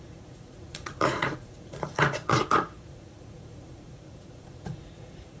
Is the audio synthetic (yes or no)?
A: yes